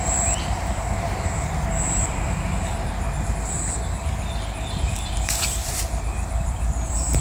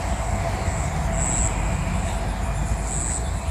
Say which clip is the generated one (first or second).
first